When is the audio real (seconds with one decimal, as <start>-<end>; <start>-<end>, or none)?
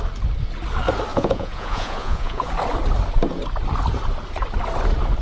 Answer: 0.0-1.1; 2.5-5.2